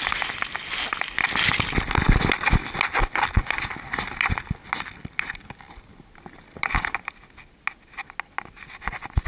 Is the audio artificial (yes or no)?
no